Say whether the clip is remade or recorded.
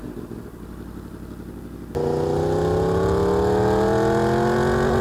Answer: recorded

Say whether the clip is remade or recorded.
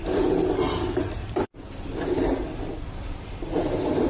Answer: remade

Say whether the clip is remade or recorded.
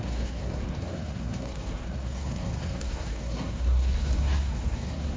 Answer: remade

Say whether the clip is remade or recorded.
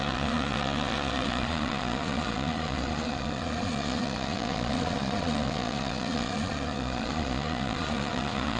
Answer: remade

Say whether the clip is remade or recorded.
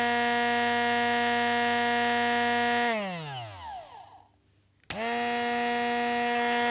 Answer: recorded